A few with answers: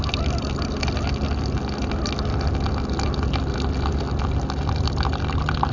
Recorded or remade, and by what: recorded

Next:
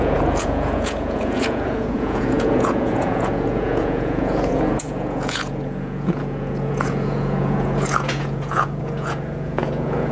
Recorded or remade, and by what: remade, vocoder, Vocos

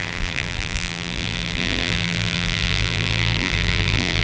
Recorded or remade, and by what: remade, vocoder, BigVGAN v2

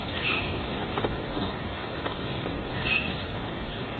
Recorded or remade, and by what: remade, codec, DAC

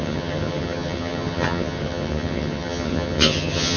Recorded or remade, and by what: remade, vocoder, HiFi-GAN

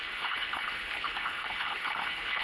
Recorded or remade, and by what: remade, codec, HILCodec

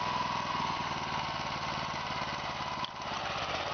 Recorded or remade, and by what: recorded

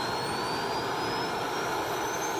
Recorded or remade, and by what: recorded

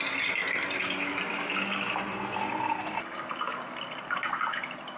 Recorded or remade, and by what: recorded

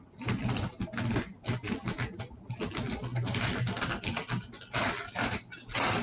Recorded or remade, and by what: recorded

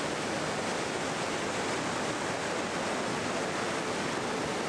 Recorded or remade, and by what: recorded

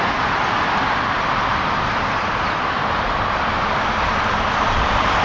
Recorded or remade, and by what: remade, vocoder, BigVGAN v2